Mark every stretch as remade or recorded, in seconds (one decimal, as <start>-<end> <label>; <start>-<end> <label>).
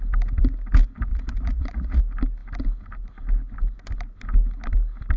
0.0-1.1 recorded; 1.1-2.0 remade; 2.0-5.2 recorded